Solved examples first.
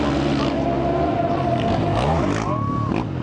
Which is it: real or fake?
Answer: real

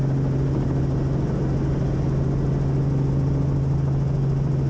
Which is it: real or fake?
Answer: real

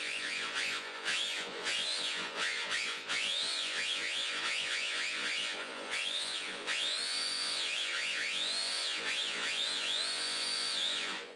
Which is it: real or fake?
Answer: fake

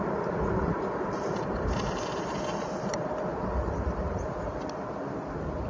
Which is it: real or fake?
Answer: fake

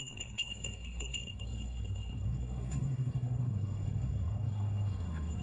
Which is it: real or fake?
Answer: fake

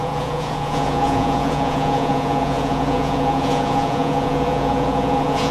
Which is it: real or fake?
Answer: fake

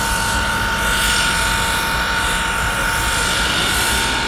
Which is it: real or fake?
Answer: real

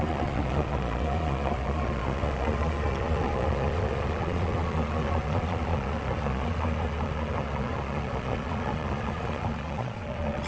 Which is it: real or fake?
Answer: fake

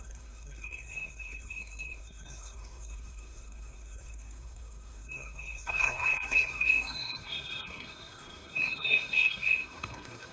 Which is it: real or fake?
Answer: fake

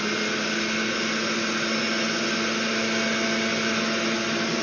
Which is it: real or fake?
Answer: real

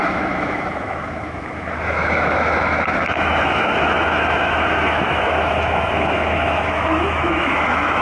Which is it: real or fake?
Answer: fake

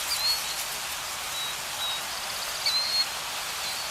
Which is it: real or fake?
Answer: real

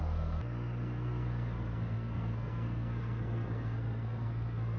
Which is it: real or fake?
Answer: fake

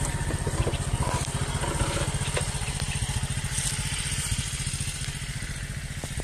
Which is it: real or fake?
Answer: real